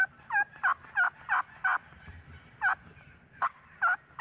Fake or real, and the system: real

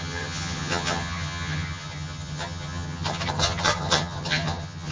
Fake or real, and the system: fake, vocoder, HiFi-GAN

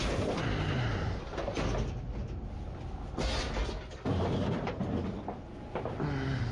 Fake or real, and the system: real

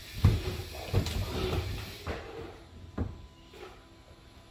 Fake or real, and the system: real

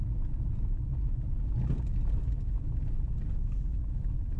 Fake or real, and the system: real